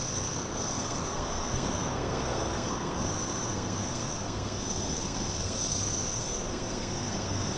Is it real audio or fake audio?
fake